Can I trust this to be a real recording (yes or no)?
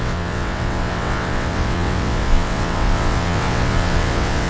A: no